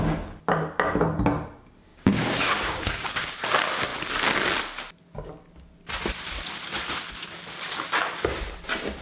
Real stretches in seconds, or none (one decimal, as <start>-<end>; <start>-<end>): 0.0-1.9; 3.3-9.0